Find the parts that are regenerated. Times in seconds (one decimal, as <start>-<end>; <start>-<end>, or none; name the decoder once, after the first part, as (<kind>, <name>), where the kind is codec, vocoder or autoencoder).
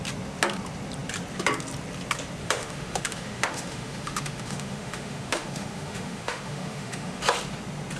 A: 2.4-7.2 (autoencoder, DAC-VAE)